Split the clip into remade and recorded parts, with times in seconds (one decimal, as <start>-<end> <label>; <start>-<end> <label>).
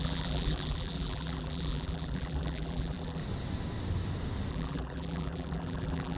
0.0-3.2 remade; 3.2-4.5 recorded; 4.5-6.2 remade